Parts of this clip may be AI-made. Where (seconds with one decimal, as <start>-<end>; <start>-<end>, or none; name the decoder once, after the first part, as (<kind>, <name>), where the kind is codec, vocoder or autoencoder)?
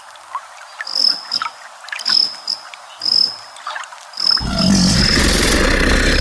none